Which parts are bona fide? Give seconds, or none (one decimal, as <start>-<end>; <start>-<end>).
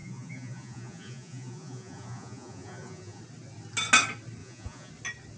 3.2-4.4; 4.9-5.4